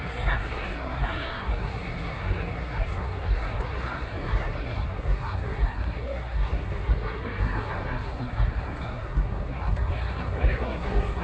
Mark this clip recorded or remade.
remade